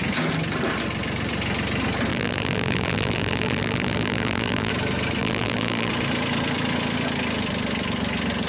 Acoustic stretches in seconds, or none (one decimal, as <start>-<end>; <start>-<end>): 0.0-2.1; 4.7-5.2; 5.9-8.5